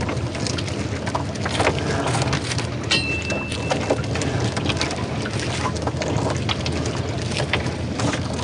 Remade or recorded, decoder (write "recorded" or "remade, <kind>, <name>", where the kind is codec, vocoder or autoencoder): recorded